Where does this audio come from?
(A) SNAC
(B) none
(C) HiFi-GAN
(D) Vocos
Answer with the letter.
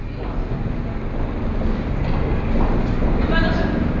B